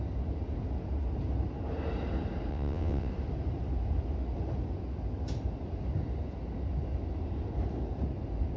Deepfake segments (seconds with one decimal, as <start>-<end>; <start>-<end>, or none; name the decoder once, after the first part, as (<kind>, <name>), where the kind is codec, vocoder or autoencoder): 2.5-3.1 (vocoder, WaveNeXt)